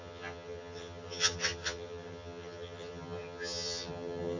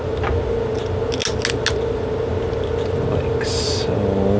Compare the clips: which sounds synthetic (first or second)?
first